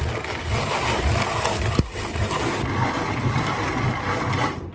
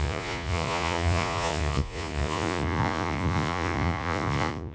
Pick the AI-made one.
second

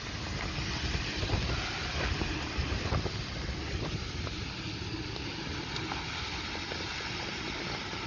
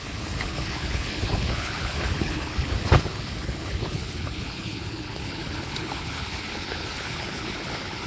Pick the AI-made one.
second